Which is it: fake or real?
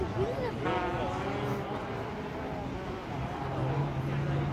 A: real